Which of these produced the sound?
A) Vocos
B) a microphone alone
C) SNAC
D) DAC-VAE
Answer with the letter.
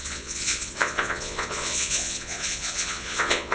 A